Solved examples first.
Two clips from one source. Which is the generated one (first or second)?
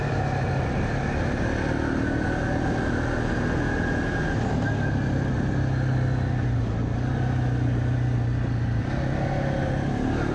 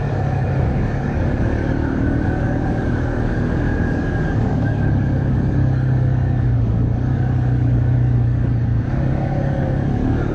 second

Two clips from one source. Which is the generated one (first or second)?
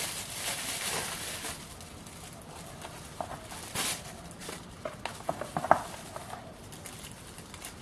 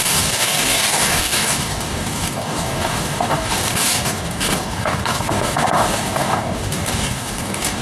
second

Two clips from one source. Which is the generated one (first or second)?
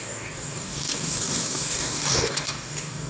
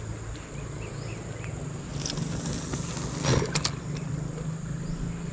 first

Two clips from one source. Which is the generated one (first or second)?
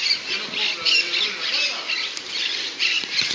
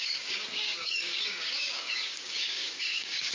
second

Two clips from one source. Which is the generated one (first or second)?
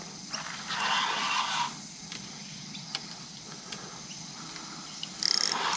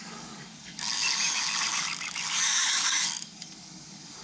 second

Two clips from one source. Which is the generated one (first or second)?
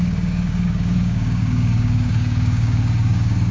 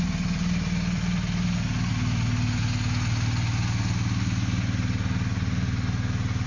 first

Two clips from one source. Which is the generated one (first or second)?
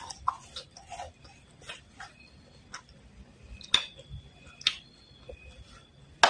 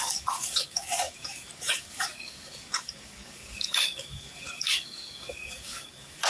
second